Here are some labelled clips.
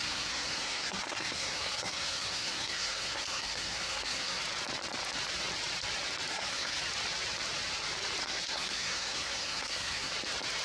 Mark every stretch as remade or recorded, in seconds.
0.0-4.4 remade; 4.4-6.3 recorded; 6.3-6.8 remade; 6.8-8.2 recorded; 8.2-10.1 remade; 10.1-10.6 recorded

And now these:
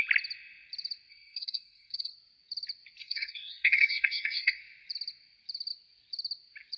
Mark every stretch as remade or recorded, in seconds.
0.0-1.1 recorded; 1.1-2.1 remade; 2.1-3.0 recorded; 3.0-4.6 remade; 4.6-6.8 recorded